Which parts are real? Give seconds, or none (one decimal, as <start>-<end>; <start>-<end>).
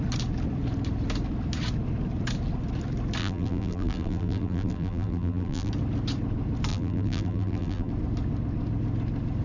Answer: 0.0-3.2; 5.7-6.7; 7.9-9.4